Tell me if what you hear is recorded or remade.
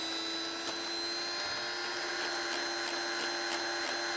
recorded